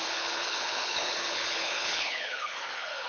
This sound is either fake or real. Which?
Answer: fake